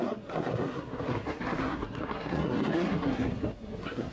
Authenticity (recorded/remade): remade